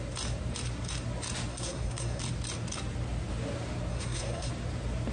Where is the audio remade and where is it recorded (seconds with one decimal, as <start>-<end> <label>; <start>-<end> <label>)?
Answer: 0.0-1.5 recorded; 1.5-2.2 remade; 2.2-3.9 recorded; 3.9-4.5 remade; 4.5-5.1 recorded